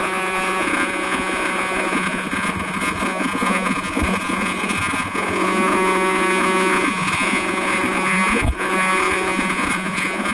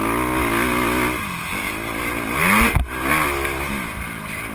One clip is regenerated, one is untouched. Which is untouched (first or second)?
second